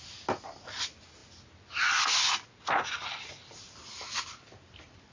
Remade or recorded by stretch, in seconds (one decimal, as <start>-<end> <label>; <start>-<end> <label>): 0.0-5.1 recorded